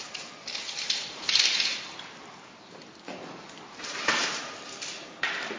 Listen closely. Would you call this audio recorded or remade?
remade